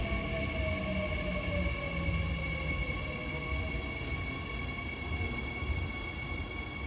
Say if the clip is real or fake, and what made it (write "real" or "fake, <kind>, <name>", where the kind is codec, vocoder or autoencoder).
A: real